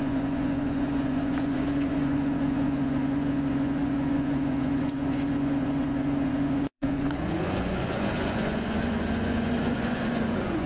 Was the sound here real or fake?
fake